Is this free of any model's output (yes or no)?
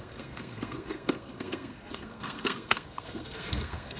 no